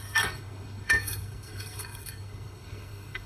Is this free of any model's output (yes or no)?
no